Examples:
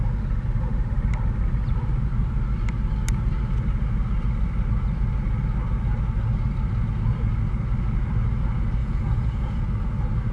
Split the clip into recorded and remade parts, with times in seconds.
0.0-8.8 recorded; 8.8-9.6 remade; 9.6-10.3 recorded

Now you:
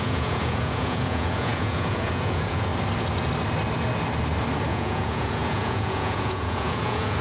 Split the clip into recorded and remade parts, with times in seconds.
0.0-2.7 remade; 2.7-4.7 recorded; 4.7-7.2 remade

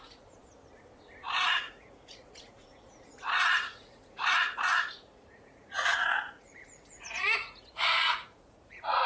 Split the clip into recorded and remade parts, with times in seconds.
0.0-0.4 remade; 0.4-1.6 recorded; 1.6-9.1 remade

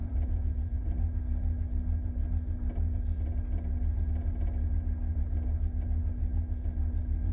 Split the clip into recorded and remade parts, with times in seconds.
0.0-0.8 remade; 0.8-7.3 recorded

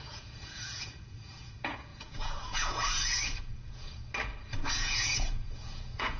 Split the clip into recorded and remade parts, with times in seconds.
0.0-4.0 remade; 4.0-4.7 recorded; 4.7-6.2 remade

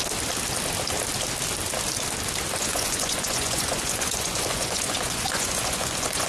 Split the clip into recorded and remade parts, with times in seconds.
0.0-2.6 recorded; 2.6-6.3 remade

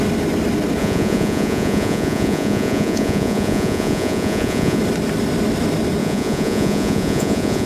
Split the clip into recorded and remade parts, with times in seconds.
0.0-0.8 recorded; 0.8-4.8 remade; 4.8-6.0 recorded; 6.0-7.7 remade